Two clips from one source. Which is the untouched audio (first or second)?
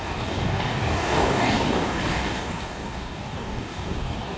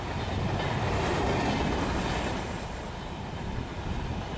second